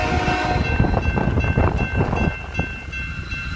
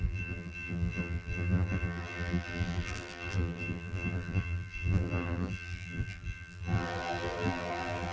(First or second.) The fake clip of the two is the second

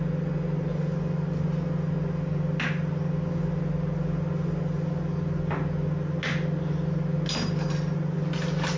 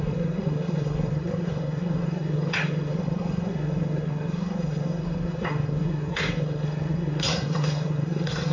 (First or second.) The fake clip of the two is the second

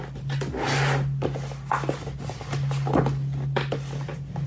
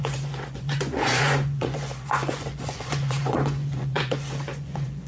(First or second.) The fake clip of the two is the second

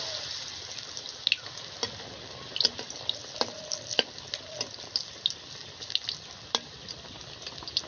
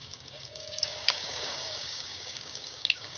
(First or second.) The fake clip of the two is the second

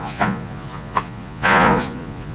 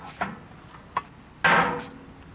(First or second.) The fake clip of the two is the first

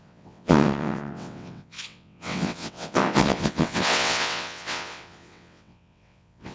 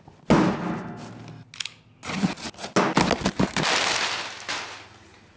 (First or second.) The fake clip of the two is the first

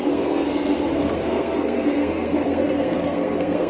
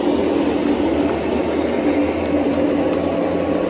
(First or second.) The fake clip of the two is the first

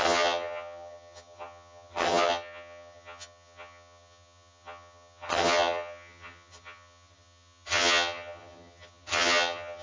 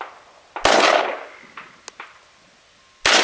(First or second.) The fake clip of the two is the first